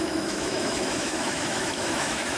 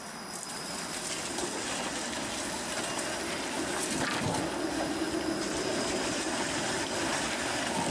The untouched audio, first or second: second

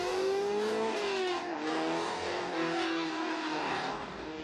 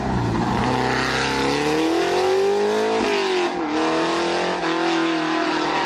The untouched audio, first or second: second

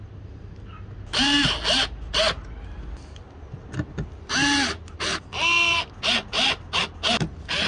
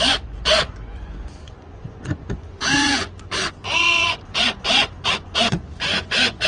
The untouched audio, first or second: first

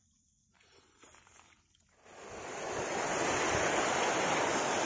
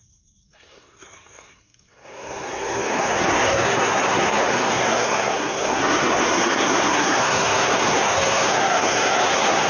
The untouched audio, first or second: first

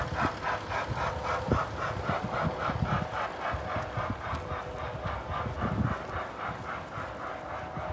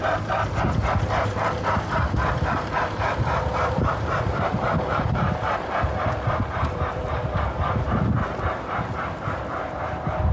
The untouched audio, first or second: first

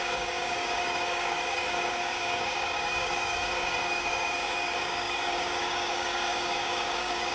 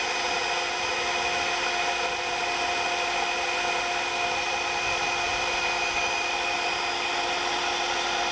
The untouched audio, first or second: second